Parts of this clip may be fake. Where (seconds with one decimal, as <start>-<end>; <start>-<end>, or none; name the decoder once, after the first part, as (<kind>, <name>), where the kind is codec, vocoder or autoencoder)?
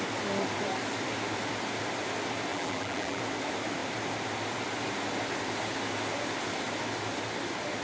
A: 2.5-3.2 (vocoder, BigVGAN v2)